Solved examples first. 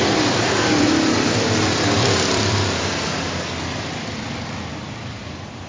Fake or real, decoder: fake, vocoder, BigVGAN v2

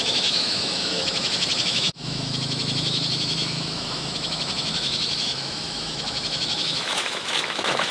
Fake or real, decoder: fake, autoencoder, DAC-VAE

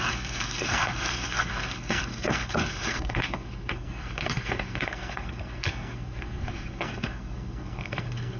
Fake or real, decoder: fake, codec, SNAC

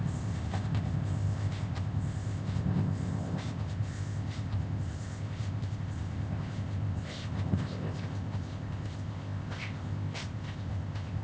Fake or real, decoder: fake, codec, ZipCodec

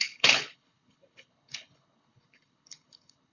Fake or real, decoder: fake, codec, HILCodec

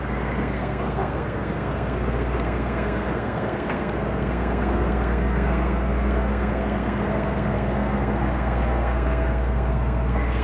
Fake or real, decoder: fake, codec, SNAC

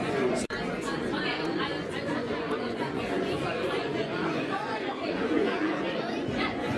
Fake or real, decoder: fake, vocoder, Vocos